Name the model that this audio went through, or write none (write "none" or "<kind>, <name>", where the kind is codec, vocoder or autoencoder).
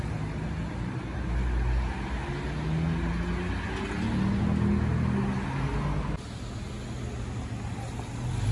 none